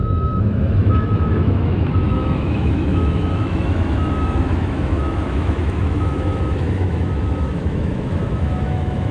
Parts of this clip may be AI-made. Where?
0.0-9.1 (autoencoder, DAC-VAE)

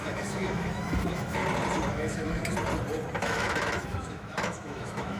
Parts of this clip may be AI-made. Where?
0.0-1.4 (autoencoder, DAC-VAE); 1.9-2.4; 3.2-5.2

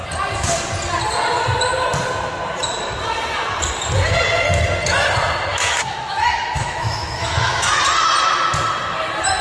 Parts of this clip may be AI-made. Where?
5.5-7.8 (autoencoder, DAC-VAE)

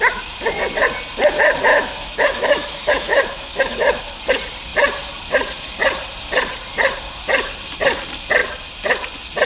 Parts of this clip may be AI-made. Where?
1.7-4.0 (autoencoder, DAC-VAE)

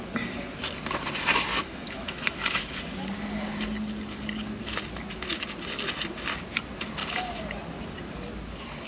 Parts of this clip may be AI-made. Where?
1.5-2.8 (autoencoder, DAC-VAE)

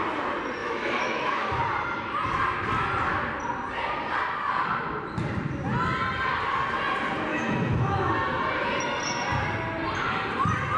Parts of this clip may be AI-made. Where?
0.6-1.6 (autoencoder, DAC-VAE); 7.3-8.1

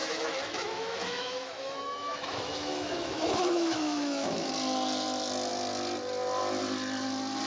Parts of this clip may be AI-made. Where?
0.0-4.5 (autoencoder, DAC-VAE)